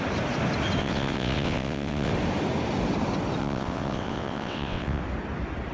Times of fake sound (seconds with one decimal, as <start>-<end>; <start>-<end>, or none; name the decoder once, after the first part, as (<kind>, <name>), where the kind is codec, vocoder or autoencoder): 0.8-2.1 (vocoder, WaveNeXt); 3.4-5.0

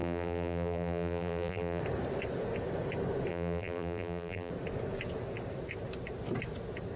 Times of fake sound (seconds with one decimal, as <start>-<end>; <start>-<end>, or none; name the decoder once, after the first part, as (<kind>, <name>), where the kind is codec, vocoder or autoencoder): 0.0-1.8 (vocoder, BigVGAN v2); 3.3-4.5

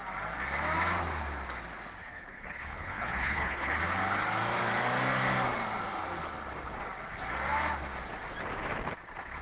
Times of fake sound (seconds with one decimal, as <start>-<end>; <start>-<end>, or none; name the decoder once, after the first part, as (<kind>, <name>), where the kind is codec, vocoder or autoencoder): 2.0-3.8 (codec, HILCodec)